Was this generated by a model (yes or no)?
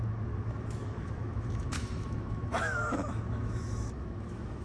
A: yes